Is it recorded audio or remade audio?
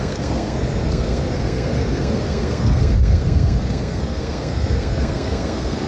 remade